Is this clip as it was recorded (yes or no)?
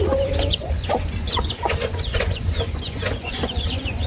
no